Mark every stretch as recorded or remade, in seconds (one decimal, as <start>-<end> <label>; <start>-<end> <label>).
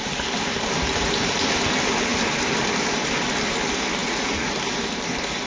0.0-4.0 recorded; 4.0-4.5 remade; 4.5-5.5 recorded